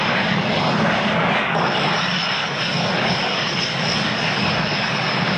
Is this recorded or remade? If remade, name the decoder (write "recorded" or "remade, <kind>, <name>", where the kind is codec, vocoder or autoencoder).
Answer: remade, codec, DAC